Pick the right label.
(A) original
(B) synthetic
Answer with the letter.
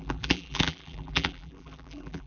B